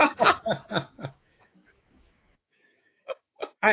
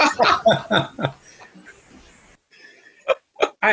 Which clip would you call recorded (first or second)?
second